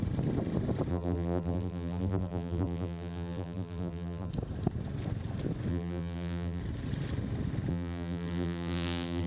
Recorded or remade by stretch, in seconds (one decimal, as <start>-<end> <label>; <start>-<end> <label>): 0.0-0.9 recorded; 0.9-4.3 remade; 4.3-5.7 recorded; 5.7-6.6 remade; 6.6-7.7 recorded; 7.7-9.3 remade